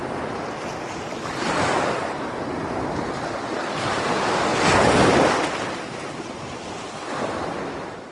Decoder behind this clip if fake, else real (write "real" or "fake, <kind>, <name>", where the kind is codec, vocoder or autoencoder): real